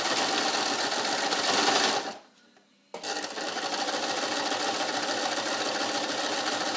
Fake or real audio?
real